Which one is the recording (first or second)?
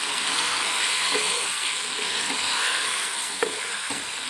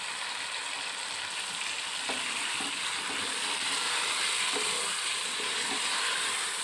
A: second